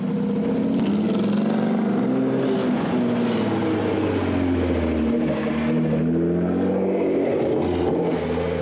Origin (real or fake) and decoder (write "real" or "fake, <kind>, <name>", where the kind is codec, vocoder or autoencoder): real